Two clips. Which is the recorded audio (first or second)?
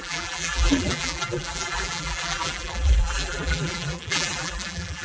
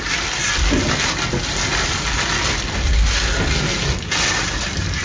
second